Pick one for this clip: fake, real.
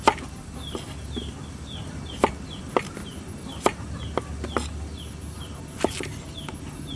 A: real